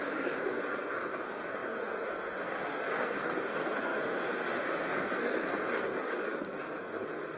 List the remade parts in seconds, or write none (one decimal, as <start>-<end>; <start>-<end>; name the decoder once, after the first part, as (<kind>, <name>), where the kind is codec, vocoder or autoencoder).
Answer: 0.0-7.4 (codec, SNAC)